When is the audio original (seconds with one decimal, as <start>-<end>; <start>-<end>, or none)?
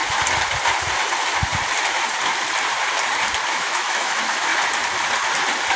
0.0-3.5; 4.5-5.8